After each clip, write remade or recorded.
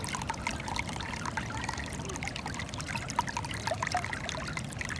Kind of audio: recorded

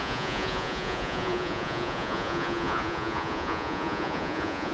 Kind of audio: remade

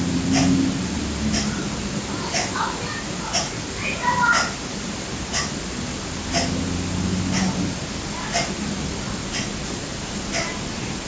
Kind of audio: recorded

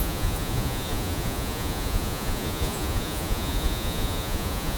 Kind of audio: remade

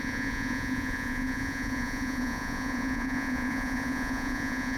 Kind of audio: remade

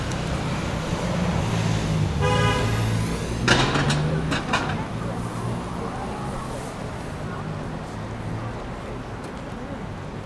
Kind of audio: recorded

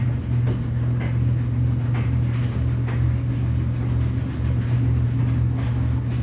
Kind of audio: recorded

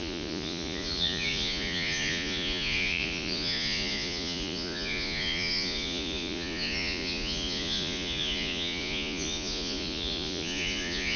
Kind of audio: remade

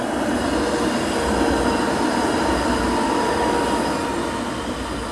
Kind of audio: recorded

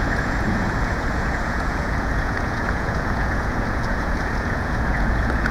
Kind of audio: remade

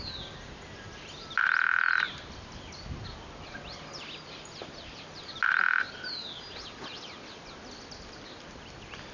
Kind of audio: recorded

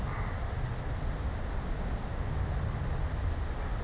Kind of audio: recorded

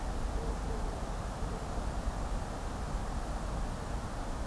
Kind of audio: recorded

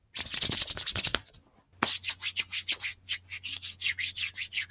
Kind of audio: recorded